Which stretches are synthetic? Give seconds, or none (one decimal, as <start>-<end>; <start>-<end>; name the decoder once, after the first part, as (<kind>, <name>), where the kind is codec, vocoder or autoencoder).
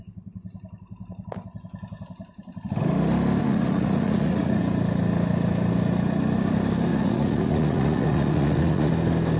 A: 3.4-4.6 (vocoder, Vocos); 6.9-8.9